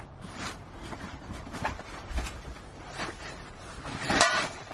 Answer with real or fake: fake